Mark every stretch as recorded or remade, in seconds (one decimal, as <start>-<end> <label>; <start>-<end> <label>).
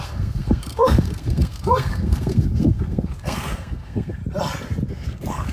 0.0-4.2 remade; 4.2-4.9 recorded; 4.9-5.5 remade